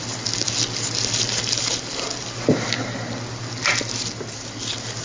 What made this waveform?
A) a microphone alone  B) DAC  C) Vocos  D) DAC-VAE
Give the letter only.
A